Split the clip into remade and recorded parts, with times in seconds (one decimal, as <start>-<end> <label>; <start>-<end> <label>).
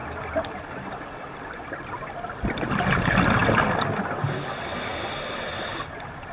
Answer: 0.0-6.3 recorded